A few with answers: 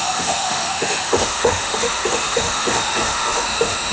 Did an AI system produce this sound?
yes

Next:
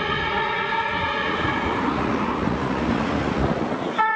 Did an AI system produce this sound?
yes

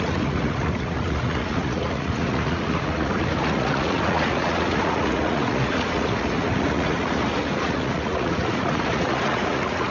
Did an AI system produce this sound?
yes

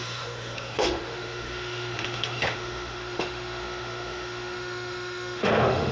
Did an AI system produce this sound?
yes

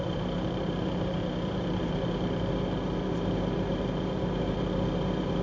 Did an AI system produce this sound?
yes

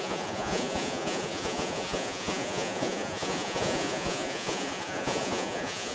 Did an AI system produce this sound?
yes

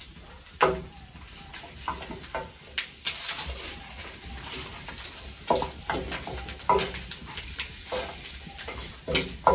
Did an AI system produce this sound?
no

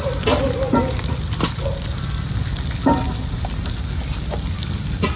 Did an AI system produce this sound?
no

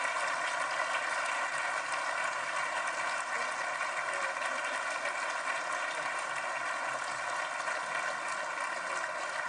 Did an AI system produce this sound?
no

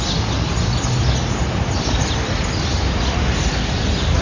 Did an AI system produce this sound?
no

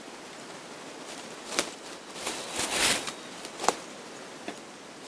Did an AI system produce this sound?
no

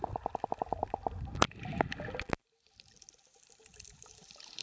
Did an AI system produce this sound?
no